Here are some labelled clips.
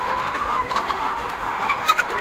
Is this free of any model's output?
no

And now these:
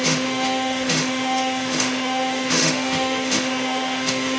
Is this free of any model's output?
no